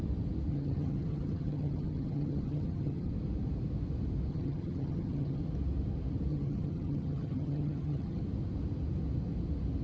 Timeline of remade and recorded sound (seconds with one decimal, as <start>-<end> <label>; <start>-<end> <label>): 0.0-0.5 recorded; 0.5-3.1 remade; 3.1-4.3 recorded; 4.3-5.4 remade; 5.4-6.3 recorded; 6.3-8.2 remade; 8.2-9.8 recorded